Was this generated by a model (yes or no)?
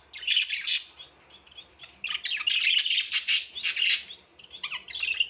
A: no